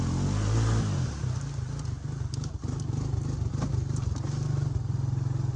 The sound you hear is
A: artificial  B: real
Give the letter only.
B